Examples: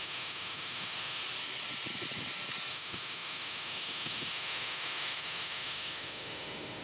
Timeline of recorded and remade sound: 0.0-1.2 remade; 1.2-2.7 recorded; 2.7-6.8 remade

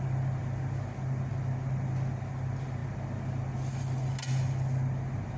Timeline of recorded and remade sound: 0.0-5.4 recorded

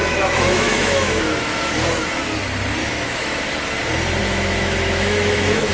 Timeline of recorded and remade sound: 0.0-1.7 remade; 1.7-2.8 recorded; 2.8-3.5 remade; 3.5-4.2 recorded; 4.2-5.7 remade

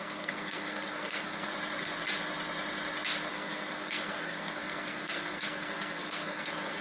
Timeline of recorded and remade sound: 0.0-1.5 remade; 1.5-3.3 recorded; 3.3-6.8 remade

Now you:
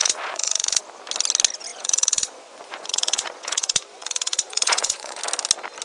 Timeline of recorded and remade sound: 0.0-0.8 remade; 0.8-1.7 recorded; 1.7-5.2 remade; 5.2-5.8 recorded

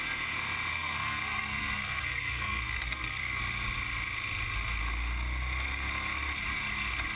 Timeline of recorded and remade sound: 0.0-0.7 recorded; 0.7-3.4 remade; 3.4-7.2 recorded